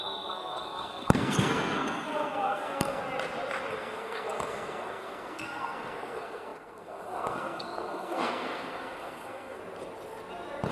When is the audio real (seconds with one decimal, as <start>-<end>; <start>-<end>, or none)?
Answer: 3.0-3.7; 9.6-10.7